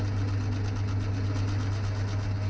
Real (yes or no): yes